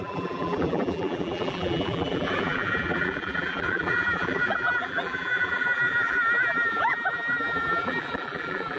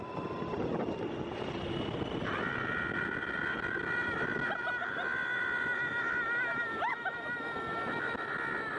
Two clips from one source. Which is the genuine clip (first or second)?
second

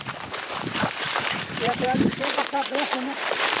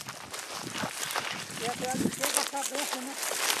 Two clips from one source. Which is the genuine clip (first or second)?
second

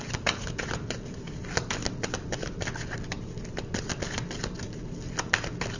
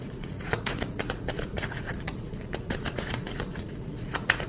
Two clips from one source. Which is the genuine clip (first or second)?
first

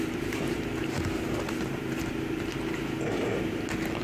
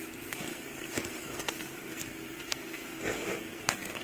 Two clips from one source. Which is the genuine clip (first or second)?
first